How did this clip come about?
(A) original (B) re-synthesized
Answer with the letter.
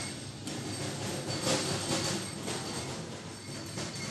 A